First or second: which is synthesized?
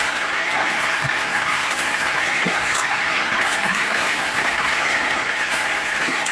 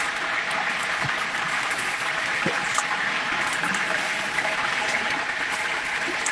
first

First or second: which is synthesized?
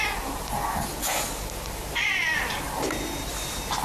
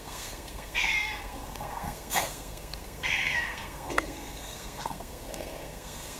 second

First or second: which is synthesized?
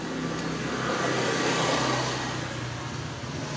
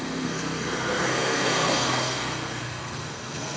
second